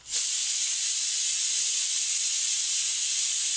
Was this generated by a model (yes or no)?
no